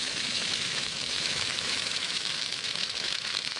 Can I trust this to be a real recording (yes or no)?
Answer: no